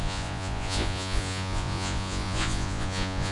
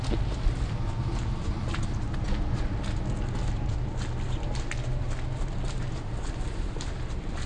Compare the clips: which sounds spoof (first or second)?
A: first